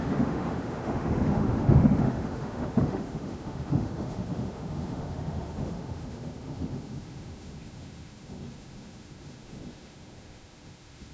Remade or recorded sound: remade